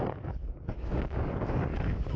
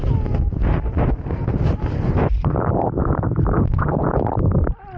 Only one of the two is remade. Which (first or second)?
first